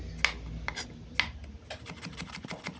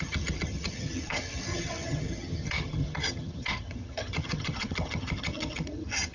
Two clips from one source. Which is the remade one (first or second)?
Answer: second